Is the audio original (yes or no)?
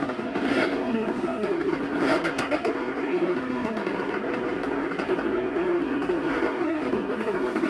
no